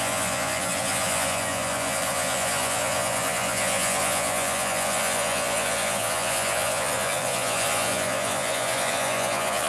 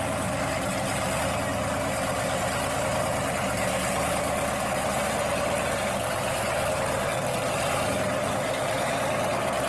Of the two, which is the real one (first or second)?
second